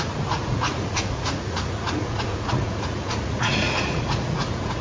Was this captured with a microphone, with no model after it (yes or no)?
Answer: no